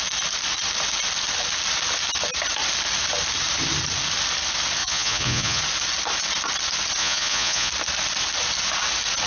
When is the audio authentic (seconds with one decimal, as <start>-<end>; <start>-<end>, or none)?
0.0-4.8; 5.6-7.0; 7.7-9.3